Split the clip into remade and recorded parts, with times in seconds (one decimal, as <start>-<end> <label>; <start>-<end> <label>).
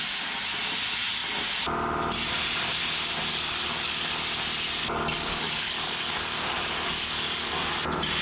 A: 0.0-3.3 recorded; 3.3-4.1 remade; 4.1-4.8 recorded; 4.8-7.7 remade; 7.7-8.2 recorded